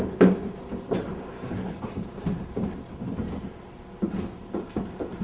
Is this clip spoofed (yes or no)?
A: no